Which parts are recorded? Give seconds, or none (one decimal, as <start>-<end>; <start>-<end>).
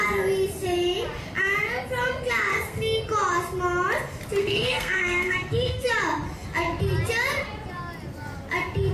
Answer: 0.0-2.5; 3.0-4.4; 5.9-8.9